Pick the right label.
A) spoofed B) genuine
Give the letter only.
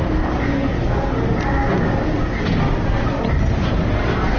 B